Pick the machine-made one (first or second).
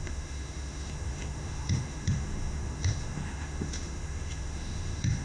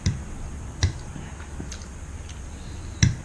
first